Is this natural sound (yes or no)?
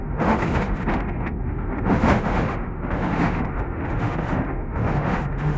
no